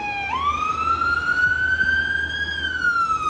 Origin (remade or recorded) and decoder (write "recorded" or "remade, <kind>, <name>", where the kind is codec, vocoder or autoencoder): recorded